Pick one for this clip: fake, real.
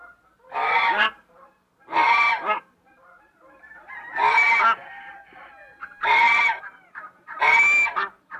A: fake